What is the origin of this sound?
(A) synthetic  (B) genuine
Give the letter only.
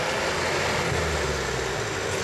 B